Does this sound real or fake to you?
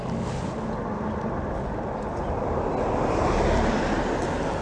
real